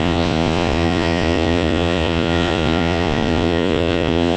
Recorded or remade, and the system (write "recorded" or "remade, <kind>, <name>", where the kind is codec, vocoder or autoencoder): remade, vocoder, Vocos